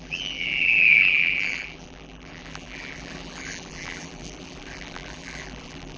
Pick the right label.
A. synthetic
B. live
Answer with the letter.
A